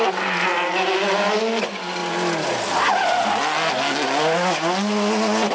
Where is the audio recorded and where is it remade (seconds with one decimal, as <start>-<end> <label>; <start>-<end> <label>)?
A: 0.0-5.5 recorded